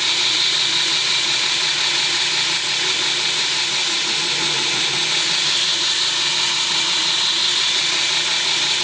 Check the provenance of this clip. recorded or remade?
remade